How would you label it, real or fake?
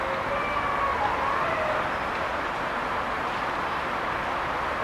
real